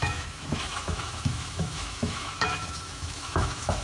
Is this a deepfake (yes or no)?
yes